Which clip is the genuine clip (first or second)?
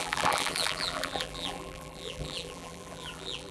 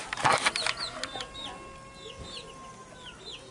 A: second